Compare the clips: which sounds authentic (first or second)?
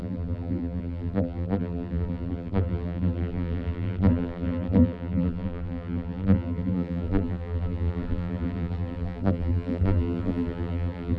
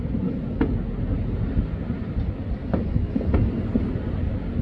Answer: second